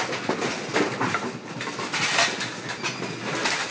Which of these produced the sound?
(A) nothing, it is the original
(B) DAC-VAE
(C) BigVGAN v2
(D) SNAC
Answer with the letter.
A